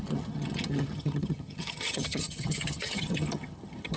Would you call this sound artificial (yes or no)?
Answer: yes